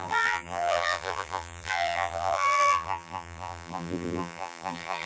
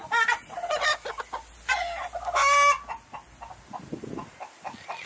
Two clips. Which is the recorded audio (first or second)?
second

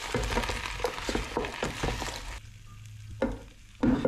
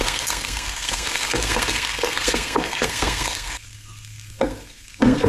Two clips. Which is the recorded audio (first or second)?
first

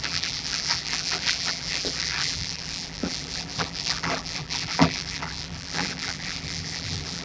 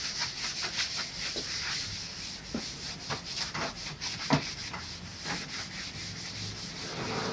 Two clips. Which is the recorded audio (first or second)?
second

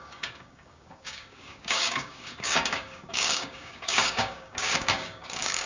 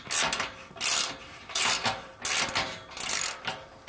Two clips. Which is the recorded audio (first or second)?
second